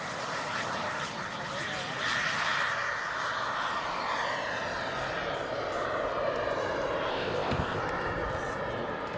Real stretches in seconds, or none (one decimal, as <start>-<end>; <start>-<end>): 0.0-7.1; 7.8-9.2